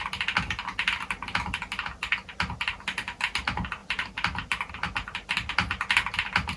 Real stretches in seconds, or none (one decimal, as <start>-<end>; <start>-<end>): 0.0-3.8; 4.7-6.6